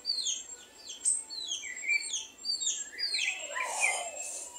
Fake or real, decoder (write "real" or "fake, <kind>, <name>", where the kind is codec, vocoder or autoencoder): fake, vocoder, BigVGAN v2